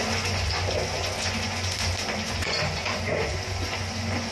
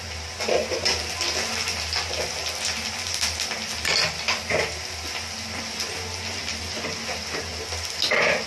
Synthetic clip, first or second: first